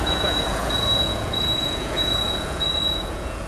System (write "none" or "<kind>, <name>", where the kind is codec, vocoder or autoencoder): vocoder, Vocos